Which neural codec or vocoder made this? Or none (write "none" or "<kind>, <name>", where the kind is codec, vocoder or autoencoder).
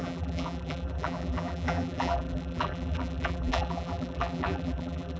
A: vocoder, BigVGAN v2